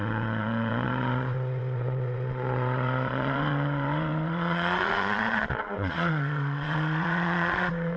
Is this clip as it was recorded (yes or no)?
no